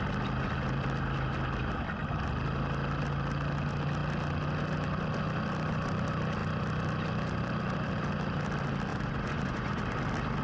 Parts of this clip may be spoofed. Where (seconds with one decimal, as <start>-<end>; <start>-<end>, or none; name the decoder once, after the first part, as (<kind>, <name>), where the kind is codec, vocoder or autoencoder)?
8.9-9.8 (vocoder, Vocos)